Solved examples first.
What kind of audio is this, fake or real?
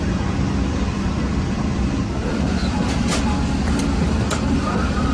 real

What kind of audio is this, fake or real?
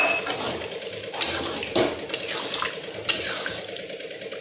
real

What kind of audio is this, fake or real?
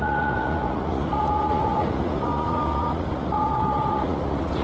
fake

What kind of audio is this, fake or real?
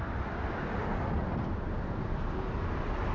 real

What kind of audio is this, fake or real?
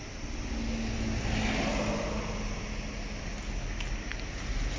real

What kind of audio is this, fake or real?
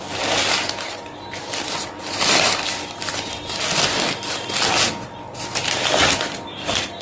real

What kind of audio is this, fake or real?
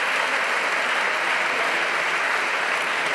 real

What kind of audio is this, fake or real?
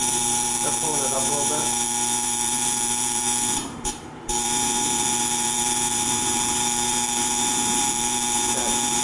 fake